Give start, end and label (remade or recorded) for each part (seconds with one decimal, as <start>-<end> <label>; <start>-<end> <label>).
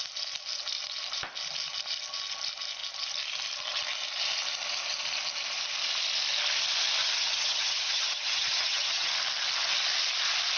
0.0-7.0 recorded; 7.0-9.1 remade; 9.1-10.6 recorded